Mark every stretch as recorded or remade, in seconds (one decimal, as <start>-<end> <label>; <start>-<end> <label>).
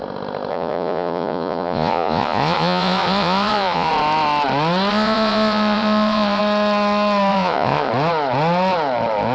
0.0-0.5 recorded; 0.5-3.9 remade; 3.9-4.9 recorded; 4.9-6.4 remade; 6.4-7.3 recorded; 7.3-7.9 remade; 7.9-9.3 recorded